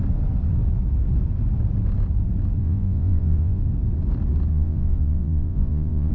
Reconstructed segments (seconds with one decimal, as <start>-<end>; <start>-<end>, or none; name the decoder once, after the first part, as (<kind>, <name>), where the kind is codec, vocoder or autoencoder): 2.6-3.6 (vocoder, Vocos); 4.5-6.1